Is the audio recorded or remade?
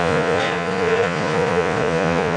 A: remade